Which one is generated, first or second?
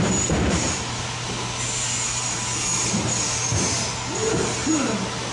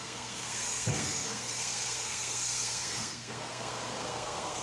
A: second